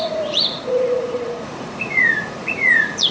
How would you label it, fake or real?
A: fake